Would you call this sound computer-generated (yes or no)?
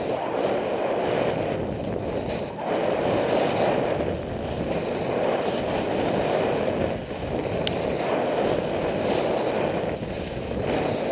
no